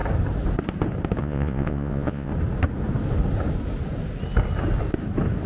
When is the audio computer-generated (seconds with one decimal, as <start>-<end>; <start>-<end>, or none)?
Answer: 1.2-2.3